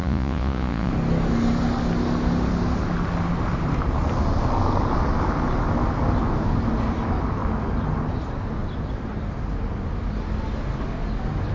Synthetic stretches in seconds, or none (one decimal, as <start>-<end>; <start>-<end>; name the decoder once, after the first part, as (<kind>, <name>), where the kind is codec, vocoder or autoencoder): 0.0-0.9 (vocoder, Vocos)